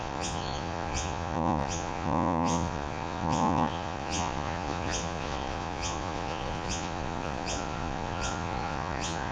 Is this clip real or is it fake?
fake